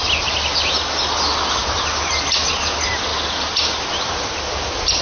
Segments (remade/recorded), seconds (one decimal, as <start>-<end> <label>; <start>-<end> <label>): 0.0-5.0 recorded